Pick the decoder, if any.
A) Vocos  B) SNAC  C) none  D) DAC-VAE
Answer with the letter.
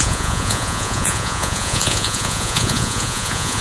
A